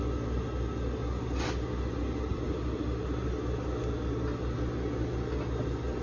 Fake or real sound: real